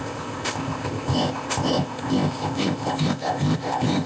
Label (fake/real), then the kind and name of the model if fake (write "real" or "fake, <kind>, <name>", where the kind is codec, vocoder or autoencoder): fake, codec, ZipCodec